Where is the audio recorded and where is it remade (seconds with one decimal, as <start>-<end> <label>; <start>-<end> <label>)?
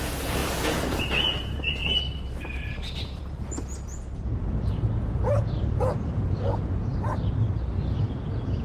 0.0-1.8 remade; 1.8-2.8 recorded; 2.8-6.9 remade; 6.9-8.0 recorded; 8.0-8.6 remade